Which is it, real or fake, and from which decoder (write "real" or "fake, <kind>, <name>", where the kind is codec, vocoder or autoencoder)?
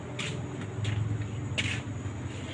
real